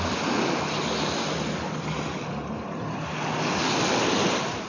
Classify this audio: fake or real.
real